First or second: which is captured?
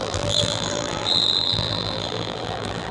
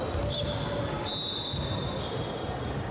second